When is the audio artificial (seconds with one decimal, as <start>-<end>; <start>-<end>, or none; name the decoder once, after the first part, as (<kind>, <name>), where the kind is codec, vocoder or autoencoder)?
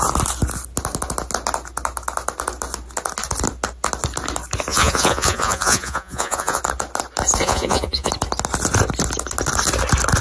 4.7-6.6 (vocoder, Vocos); 7.4-8.1